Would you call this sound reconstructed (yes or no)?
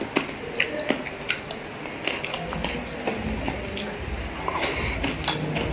no